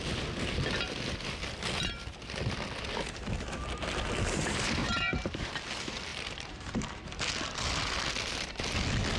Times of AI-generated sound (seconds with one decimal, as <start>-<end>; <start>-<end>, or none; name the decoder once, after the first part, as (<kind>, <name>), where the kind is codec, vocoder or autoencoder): 4.8-5.5 (vocoder, BigVGAN v2); 6.1-7.0